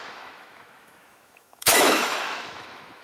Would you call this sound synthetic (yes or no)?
yes